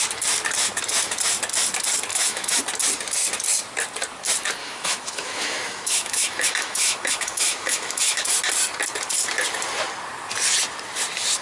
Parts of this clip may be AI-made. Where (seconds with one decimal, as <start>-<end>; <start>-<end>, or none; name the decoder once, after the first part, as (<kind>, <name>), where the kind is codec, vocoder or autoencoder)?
2.1-2.6 (autoencoder, DAC-VAE); 4.6-8.2